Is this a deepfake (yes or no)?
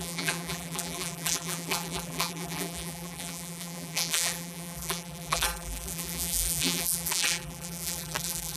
yes